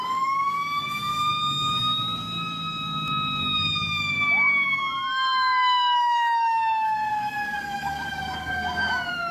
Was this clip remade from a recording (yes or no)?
yes